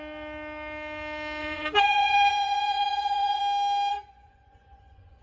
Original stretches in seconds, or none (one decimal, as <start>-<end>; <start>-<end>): 0.0-1.4; 3.4-3.9